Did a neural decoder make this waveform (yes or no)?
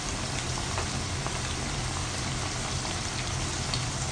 no